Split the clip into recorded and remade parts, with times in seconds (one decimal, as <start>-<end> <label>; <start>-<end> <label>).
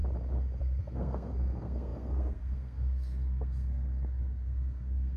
0.0-0.6 recorded; 0.6-5.2 remade